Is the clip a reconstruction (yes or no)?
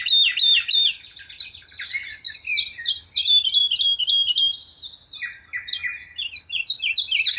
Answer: no